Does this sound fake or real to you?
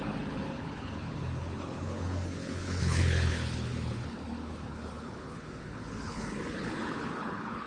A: fake